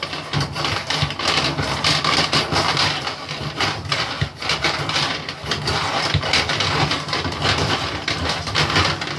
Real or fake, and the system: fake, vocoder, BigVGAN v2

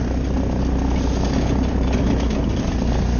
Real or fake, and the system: real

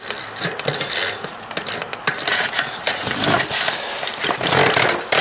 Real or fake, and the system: fake, vocoder, BigVGAN v2